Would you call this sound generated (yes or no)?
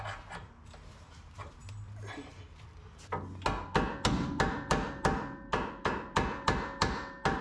no